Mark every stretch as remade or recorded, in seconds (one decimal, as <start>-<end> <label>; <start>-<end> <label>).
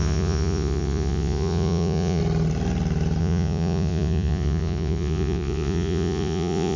0.0-2.2 remade; 2.2-3.2 recorded; 3.2-6.8 remade